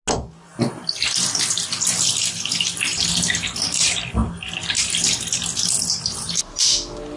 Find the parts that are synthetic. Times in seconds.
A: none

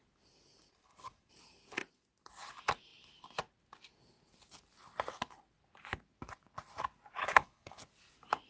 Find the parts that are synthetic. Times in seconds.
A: 0.7-1.3; 7.2-7.8

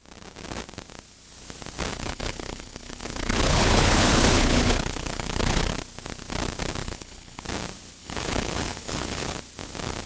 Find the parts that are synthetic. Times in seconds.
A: 1.9-5.7; 6.8-7.4; 8.0-9.4

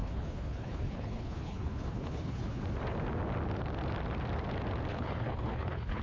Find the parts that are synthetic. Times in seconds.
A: 0.0-2.6; 4.9-6.0

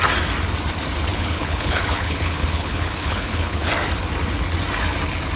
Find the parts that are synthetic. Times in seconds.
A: 1.1-3.7

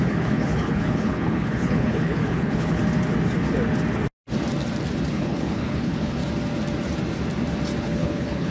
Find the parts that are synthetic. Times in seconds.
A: 0.0-2.8; 5.1-6.2; 7.8-8.5